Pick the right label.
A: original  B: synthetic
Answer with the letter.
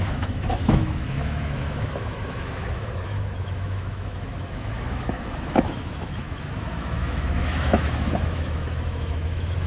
B